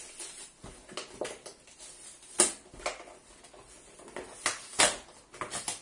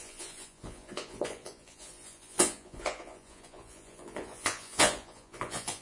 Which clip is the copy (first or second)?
second